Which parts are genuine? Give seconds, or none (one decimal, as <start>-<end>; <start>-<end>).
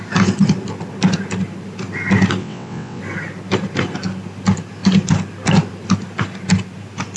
0.0-2.4; 3.0-7.2